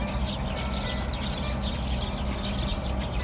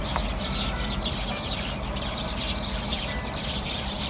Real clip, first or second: first